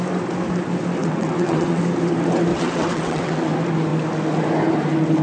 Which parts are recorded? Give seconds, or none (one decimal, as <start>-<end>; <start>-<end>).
0.0-1.0; 1.8-2.5; 3.5-5.2